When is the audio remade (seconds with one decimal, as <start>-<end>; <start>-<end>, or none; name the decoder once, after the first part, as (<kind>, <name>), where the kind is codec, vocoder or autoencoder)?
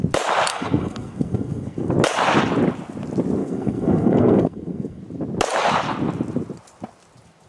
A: 0.5-1.9 (codec, SNAC); 3.4-5.0